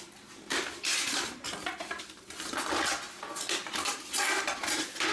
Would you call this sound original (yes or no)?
yes